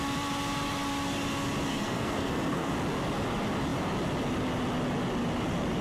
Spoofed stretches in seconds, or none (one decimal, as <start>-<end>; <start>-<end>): 1.7-2.7